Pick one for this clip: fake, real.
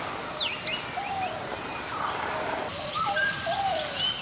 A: real